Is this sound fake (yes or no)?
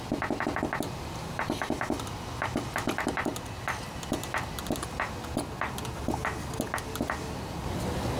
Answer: no